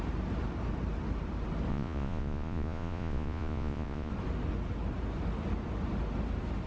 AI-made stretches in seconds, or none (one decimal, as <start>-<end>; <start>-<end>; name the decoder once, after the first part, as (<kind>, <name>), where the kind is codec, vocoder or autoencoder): 1.7-4.1 (vocoder, Vocos)